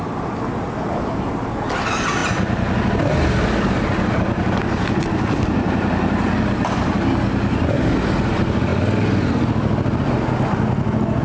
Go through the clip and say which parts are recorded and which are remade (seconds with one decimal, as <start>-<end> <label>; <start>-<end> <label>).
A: 0.0-11.2 recorded